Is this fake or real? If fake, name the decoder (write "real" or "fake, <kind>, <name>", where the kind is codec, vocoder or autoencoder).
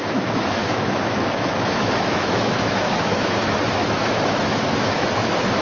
fake, autoencoder, DAC-VAE